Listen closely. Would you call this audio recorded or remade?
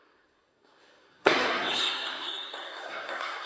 remade